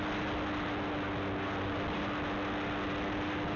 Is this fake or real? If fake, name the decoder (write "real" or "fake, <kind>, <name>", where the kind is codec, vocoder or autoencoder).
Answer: real